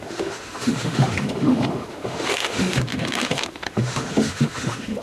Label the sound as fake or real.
fake